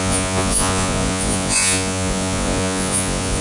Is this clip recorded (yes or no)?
no